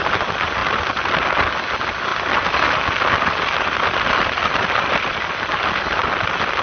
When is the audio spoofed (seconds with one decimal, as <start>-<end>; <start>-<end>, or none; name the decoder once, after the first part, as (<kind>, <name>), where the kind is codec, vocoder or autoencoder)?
none